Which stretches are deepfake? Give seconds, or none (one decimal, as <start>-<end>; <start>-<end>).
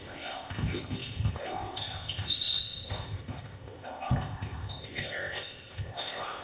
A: 0.0-6.4